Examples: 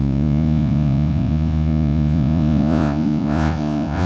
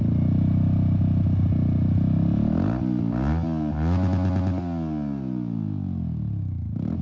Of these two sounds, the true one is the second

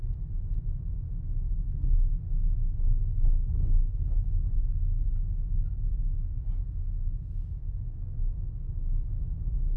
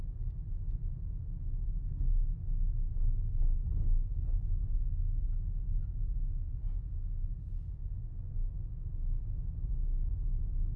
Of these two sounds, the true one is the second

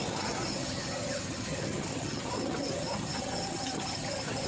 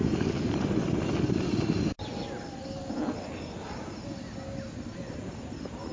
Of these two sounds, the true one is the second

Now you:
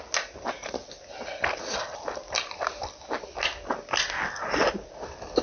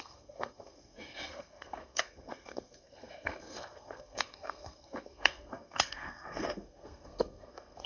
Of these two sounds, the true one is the first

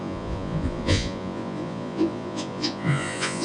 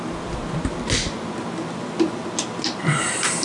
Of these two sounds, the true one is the second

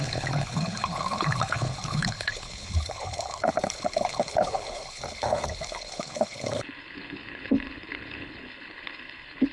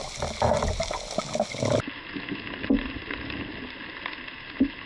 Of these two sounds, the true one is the second